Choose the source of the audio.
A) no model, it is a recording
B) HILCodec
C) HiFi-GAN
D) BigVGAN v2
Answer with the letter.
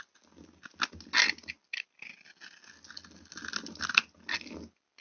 A